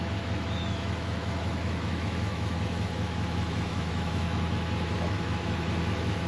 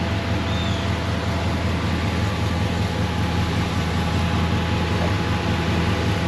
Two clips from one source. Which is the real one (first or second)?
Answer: second